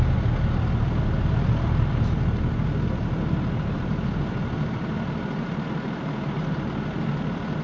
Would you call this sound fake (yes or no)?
no